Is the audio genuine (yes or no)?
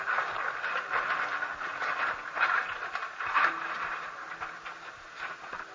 yes